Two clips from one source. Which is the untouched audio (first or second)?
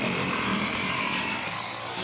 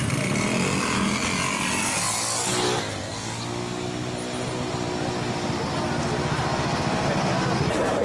second